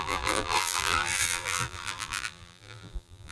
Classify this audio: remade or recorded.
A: remade